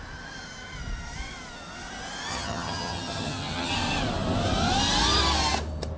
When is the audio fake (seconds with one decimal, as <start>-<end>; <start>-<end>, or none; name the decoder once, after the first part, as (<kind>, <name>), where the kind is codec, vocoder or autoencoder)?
2.3-3.7 (vocoder, HiFi-GAN)

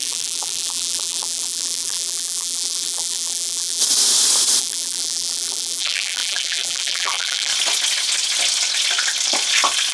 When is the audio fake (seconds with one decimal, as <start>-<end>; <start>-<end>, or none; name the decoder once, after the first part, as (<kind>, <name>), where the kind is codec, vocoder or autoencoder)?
0.0-3.8 (vocoder, BigVGAN v2); 4.6-7.5

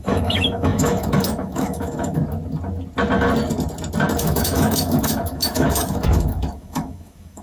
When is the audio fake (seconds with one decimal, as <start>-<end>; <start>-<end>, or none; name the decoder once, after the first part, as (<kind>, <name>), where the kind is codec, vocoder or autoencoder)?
0.0-2.2 (autoencoder, DAC-VAE); 4.2-7.4

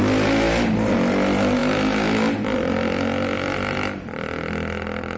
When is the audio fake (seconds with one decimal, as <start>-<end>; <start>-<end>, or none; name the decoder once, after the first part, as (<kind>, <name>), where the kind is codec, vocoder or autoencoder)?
none